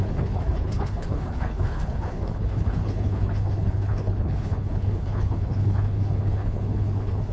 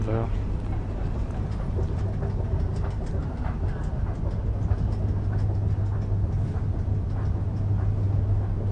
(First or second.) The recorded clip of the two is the second